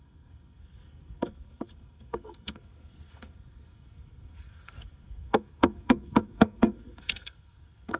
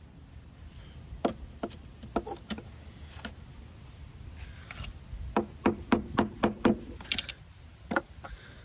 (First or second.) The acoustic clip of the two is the second